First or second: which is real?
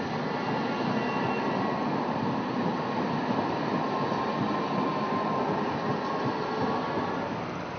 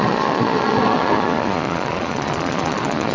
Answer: first